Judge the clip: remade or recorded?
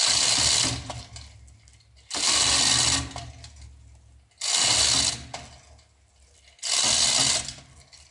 recorded